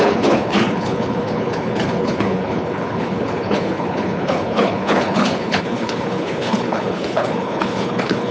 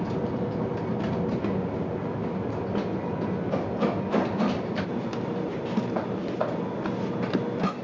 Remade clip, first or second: first